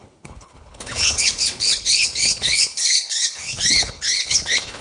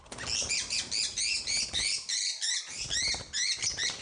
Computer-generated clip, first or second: first